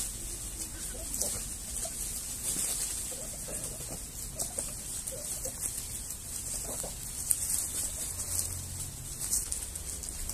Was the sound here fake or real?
real